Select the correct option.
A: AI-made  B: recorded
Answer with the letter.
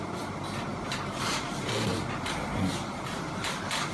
B